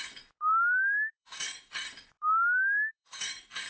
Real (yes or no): no